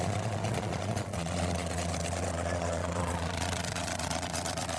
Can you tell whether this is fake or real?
fake